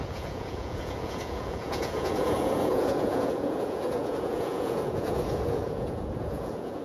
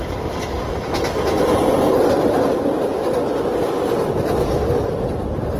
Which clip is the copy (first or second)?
first